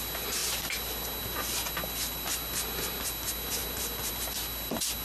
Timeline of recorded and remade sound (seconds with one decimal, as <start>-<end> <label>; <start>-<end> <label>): 0.0-5.0 recorded